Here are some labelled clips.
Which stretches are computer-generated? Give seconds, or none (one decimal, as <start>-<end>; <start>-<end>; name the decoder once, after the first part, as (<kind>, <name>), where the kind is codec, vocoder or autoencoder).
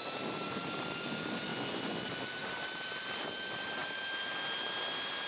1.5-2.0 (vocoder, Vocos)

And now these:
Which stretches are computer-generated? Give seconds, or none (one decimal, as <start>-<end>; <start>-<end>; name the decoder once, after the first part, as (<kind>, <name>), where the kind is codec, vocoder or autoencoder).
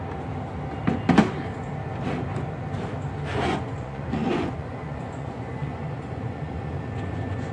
3.3-7.5 (vocoder, Vocos)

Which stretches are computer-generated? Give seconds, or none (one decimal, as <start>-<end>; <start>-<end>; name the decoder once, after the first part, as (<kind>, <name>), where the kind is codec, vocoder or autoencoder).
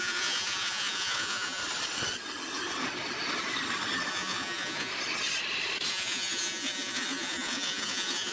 0.0-1.6 (vocoder, Vocos); 4.1-4.9; 5.9-8.3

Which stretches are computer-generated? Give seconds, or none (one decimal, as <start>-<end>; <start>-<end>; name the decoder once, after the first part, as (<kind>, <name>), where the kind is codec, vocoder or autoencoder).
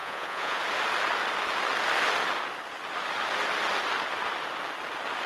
0.0-0.6 (vocoder, Vocos)